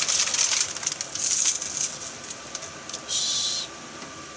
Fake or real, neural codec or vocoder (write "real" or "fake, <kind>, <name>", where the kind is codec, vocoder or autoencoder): real